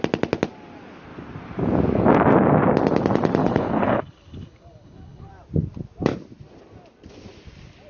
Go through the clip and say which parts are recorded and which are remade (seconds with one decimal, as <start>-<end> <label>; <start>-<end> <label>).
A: 0.0-3.4 recorded; 3.4-5.3 remade; 5.3-7.9 recorded